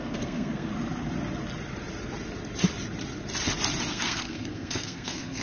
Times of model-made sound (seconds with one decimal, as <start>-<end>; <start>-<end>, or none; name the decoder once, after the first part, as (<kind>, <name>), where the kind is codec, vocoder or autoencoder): 0.0-0.7 (codec, SNAC); 3.9-5.4